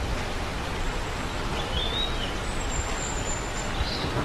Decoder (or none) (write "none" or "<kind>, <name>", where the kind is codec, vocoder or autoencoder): none